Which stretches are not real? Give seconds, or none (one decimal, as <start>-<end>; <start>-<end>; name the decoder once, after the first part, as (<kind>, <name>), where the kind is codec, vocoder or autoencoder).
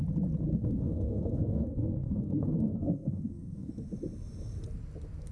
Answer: 0.5-3.7 (codec, SNAC)